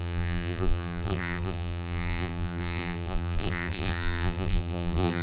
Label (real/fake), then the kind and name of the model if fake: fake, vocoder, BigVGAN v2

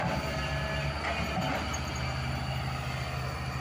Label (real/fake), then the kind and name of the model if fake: real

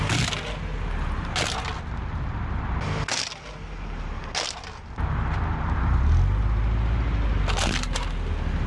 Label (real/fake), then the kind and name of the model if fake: real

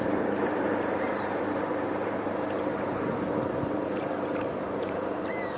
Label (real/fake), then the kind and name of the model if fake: fake, vocoder, BigVGAN v2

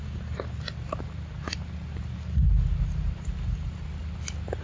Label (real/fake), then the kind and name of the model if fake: real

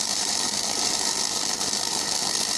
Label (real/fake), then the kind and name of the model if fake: fake, vocoder, BigVGAN v2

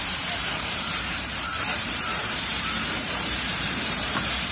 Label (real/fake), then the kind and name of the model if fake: fake, vocoder, BigVGAN v2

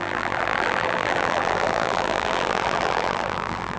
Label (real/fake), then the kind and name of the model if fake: fake, vocoder, BigVGAN v2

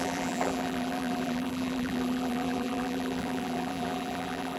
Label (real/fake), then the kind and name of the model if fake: fake, vocoder, BigVGAN v2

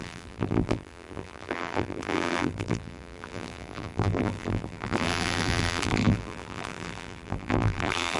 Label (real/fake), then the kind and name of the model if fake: fake, vocoder, BigVGAN v2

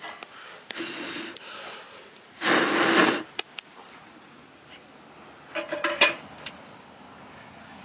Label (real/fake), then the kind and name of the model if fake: real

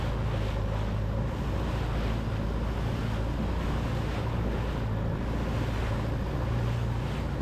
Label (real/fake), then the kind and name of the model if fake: real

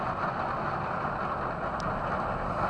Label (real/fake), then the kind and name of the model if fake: real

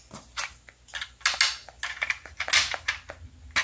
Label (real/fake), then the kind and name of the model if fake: real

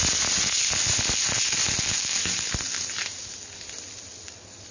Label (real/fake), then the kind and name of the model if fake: real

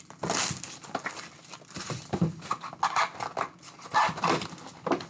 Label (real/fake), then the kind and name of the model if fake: real